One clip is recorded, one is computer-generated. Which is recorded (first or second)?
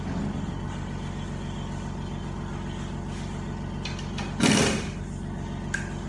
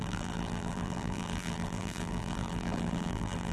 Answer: first